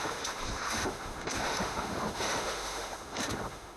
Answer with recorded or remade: remade